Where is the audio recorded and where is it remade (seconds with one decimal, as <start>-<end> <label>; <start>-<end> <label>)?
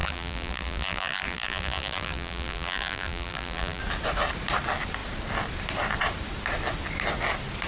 0.0-3.8 remade; 3.8-7.7 recorded